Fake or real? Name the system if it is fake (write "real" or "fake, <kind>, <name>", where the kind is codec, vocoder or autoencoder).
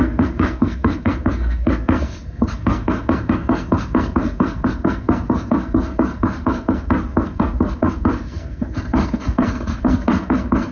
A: fake, codec, SNAC